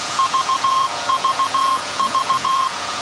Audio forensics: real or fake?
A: fake